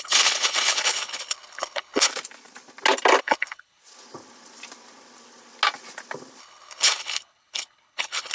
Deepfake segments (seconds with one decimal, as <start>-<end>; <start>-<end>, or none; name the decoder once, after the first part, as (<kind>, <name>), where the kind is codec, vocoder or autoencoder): 0.0-2.1 (codec, HILCodec); 3.2-3.8; 6.4-8.3